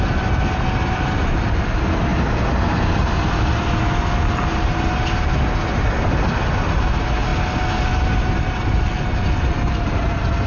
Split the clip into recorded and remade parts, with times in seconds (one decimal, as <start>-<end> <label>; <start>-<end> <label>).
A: 0.0-10.5 recorded